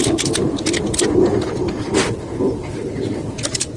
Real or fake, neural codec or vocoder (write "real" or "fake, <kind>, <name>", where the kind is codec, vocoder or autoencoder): real